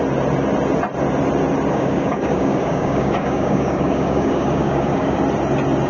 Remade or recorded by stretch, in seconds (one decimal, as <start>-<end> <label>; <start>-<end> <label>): 0.0-1.7 recorded; 1.7-5.2 remade; 5.2-5.9 recorded